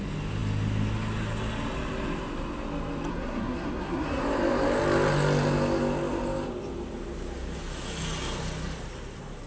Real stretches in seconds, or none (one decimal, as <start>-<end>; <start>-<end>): 0.0-3.1; 4.2-9.5